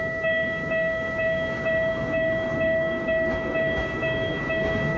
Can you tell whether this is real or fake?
fake